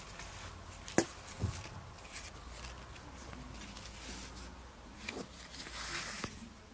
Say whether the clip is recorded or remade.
recorded